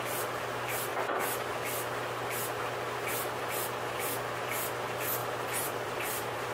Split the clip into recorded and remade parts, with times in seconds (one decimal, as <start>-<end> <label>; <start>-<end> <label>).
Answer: 0.0-5.2 recorded; 5.2-6.5 remade